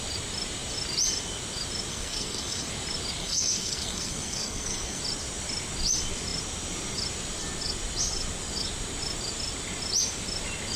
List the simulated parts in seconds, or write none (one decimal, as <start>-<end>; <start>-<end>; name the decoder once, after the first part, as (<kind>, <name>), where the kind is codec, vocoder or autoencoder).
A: 1.9-2.7 (codec, SNAC); 3.2-5.0